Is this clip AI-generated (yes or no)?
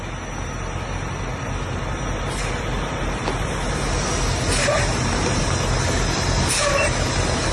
no